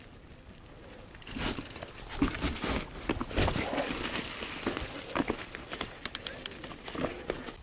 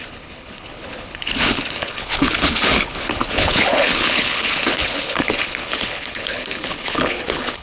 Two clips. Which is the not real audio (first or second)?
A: second